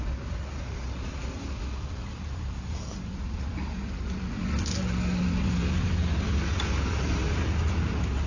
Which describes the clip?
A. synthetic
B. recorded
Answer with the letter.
B